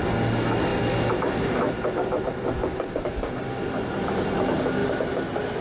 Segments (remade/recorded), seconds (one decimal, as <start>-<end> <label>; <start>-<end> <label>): 0.0-5.6 recorded